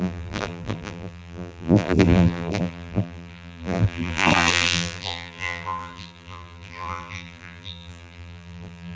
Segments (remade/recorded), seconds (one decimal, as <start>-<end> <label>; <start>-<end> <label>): 0.0-9.0 remade